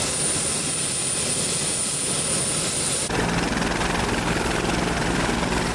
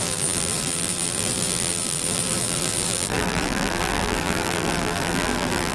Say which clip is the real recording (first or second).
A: first